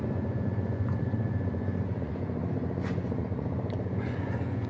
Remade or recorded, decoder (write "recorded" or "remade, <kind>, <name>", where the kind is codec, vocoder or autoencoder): remade, vocoder, Vocos